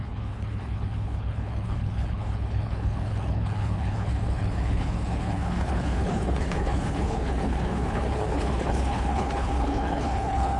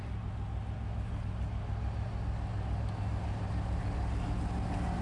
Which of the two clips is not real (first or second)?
first